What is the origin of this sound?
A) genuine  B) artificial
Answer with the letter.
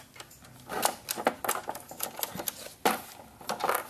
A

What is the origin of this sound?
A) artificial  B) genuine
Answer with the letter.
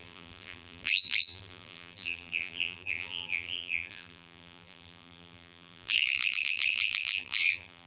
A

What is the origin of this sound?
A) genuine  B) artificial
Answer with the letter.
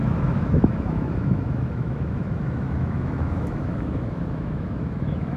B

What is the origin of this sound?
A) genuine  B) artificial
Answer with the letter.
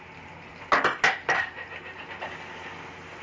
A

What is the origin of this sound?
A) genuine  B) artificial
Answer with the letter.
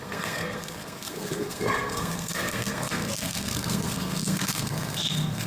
B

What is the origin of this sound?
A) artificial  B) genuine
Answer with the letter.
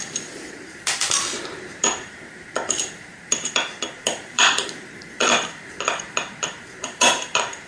A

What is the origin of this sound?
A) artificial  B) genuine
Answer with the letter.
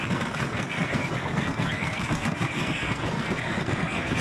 A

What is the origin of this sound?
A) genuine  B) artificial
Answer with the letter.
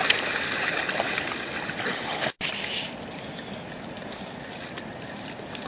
A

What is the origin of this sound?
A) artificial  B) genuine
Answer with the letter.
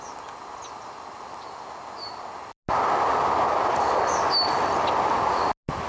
B